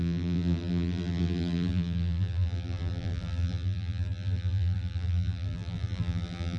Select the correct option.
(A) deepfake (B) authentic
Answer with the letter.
A